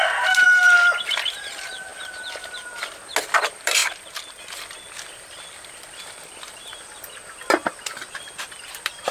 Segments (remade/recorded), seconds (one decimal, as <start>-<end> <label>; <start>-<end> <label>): 0.0-1.9 remade; 1.9-3.2 recorded; 3.2-9.1 remade